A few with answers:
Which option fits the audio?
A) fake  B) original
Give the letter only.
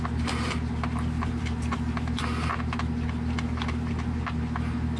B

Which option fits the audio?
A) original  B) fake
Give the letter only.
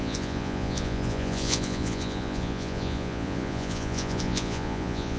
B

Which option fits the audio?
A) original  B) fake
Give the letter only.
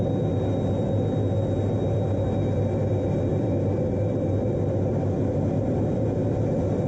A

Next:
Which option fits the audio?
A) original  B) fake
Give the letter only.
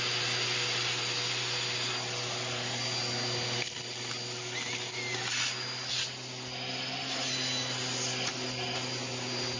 A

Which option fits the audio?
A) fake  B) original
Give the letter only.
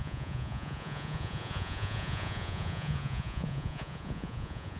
A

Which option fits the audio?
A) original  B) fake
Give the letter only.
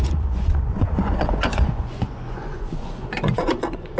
B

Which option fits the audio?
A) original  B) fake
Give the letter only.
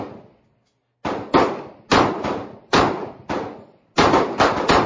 A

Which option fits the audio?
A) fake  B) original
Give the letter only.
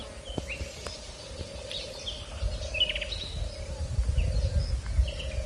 B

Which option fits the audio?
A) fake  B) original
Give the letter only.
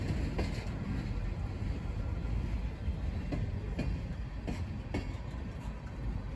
B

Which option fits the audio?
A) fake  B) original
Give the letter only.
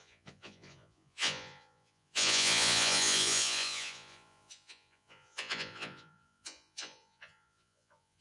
A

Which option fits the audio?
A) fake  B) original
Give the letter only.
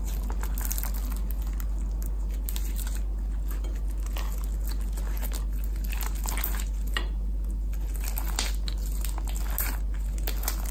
B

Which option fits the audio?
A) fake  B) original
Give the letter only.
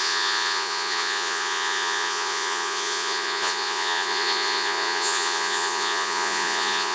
A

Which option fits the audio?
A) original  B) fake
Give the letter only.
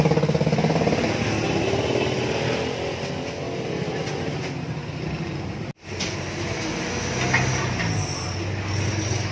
A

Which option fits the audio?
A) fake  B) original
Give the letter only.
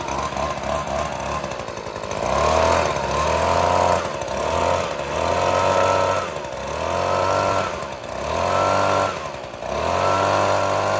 B